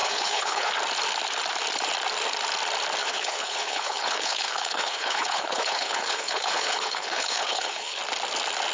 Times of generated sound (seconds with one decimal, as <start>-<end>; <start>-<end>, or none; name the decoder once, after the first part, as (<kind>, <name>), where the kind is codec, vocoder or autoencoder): 0.0-0.7 (codec, HILCodec); 3.0-8.0